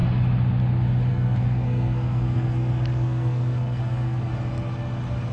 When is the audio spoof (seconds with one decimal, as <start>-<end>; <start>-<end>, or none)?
1.1-4.3